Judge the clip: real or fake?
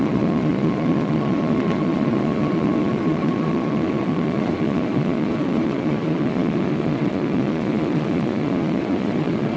fake